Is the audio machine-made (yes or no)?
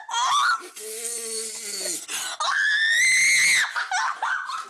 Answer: no